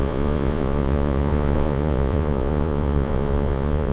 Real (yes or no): no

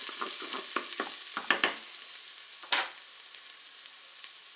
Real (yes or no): yes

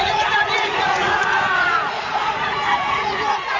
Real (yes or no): no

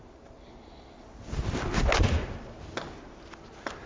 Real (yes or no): yes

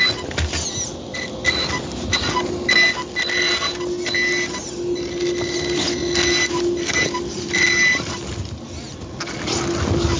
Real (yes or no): yes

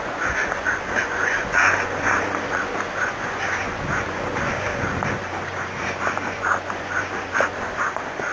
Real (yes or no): no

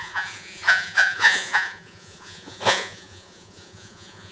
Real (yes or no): no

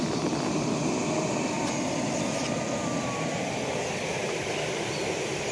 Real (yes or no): yes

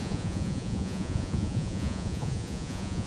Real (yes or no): no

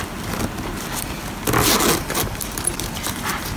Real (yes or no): yes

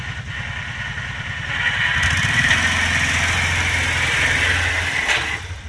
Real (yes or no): yes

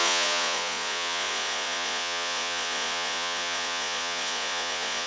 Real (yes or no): no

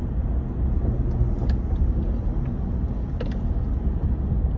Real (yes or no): yes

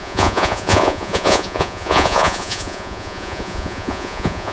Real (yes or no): no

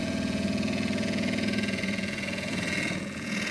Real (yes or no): no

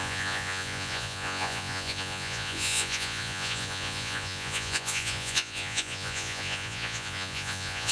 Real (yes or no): no